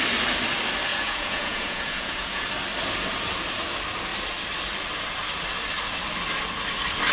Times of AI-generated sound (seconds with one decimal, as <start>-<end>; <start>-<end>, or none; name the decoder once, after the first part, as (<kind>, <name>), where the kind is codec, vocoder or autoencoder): 0.9-2.5 (vocoder, Vocos)